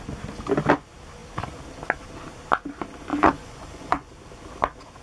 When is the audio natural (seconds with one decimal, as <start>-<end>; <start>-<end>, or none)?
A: 0.0-3.1; 4.1-5.0